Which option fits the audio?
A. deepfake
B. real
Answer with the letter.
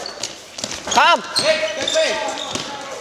B